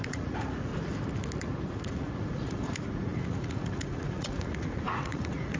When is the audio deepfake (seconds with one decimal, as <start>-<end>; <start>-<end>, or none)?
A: 0.0-0.7; 1.9-5.6